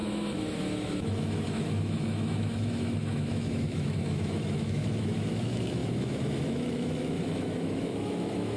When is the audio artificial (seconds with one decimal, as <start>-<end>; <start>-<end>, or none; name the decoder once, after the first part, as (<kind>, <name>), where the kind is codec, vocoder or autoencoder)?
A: 0.0-8.6 (autoencoder, DAC-VAE)